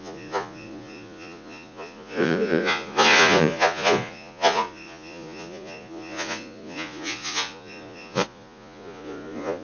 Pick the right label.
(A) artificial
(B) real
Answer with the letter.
A